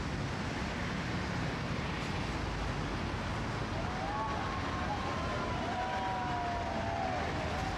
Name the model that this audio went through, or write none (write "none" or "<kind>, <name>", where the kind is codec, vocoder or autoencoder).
none